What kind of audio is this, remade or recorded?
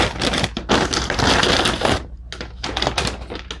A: recorded